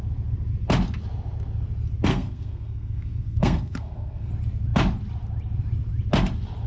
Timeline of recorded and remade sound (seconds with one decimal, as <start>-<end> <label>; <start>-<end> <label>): 0.0-2.1 recorded; 2.1-4.3 remade; 4.3-6.7 recorded